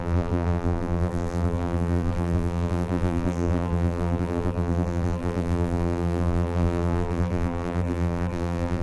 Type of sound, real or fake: fake